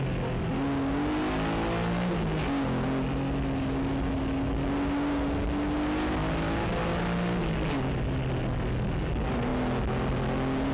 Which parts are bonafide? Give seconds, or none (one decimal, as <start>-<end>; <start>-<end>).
0.0-10.7